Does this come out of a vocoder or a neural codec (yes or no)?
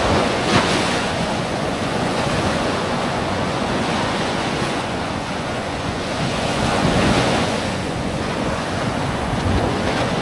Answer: yes